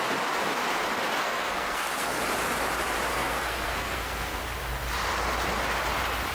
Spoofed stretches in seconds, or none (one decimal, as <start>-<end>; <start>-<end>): 1.2-2.2; 3.1-4.4